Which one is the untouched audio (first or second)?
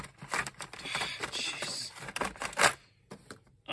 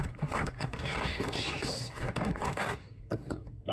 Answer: first